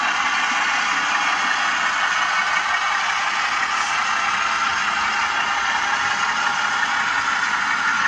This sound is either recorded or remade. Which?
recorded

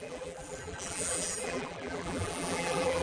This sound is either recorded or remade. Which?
remade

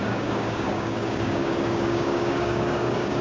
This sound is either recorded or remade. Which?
remade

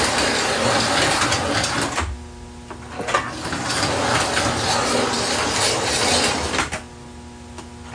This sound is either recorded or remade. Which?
recorded